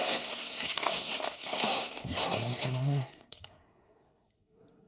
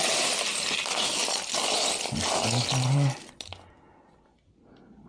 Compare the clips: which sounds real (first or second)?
second